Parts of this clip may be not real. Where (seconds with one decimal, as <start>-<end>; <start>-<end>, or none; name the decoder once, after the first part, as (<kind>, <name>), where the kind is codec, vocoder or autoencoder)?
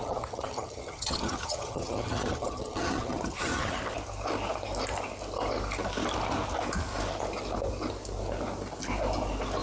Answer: 0.0-3.8 (vocoder, HiFi-GAN)